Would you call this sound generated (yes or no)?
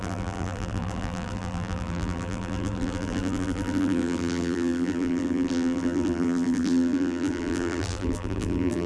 yes